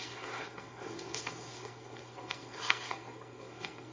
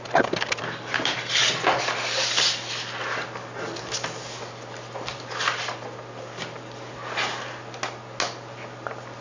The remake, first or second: first